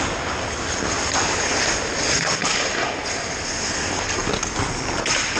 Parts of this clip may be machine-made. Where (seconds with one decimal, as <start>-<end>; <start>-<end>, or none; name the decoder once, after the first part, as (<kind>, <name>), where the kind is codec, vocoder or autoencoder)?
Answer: none